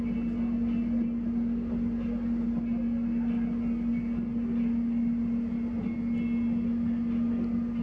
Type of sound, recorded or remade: recorded